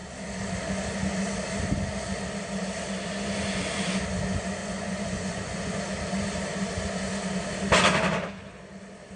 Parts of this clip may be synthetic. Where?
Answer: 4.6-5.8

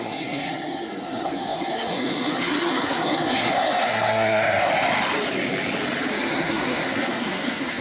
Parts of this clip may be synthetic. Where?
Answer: 0.0-4.7; 6.1-7.8

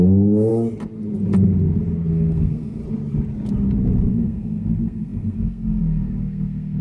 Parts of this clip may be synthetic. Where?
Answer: 0.0-0.5; 2.1-2.8; 4.1-6.8